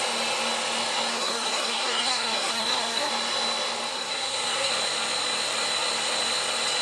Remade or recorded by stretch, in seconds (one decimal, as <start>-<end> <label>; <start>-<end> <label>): 0.0-1.1 recorded; 1.1-3.1 remade; 3.1-3.9 recorded; 3.9-4.7 remade; 4.7-6.8 recorded